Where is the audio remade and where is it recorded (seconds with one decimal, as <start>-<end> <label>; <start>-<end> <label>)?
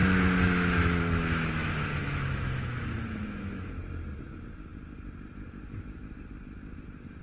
0.0-3.7 remade; 3.7-7.2 recorded